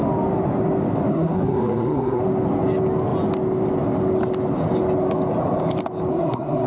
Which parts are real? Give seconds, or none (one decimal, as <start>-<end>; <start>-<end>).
0.0-1.1; 2.2-6.1